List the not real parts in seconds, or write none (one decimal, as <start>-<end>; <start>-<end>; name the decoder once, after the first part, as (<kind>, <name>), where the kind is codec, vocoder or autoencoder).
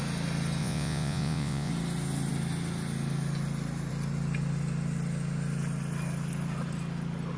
0.6-1.7 (vocoder, Vocos)